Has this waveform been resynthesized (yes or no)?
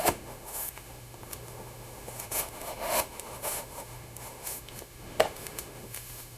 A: yes